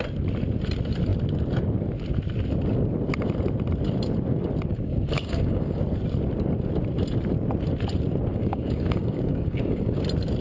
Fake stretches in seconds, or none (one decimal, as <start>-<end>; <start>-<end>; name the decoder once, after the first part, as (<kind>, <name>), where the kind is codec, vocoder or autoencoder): 4.7-5.8 (codec, DAC); 8.3-10.0